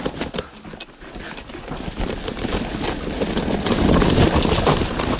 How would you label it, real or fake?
real